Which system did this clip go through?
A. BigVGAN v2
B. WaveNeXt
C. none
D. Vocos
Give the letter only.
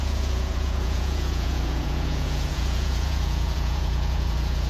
D